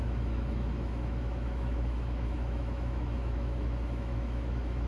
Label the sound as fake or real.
fake